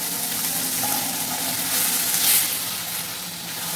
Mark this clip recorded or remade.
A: recorded